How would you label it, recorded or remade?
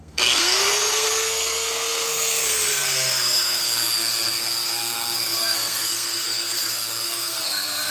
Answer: remade